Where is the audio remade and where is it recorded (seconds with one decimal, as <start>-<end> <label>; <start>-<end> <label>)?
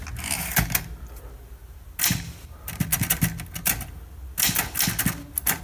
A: 0.0-5.6 recorded